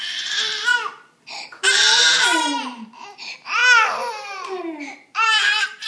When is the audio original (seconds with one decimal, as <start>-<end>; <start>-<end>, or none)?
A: 0.7-1.7; 3.6-4.1